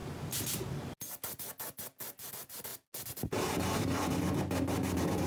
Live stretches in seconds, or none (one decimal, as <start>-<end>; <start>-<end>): 0.0-5.3